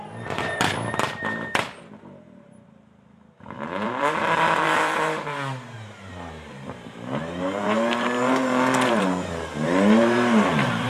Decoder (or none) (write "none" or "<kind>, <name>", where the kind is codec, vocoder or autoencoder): vocoder, BigVGAN v2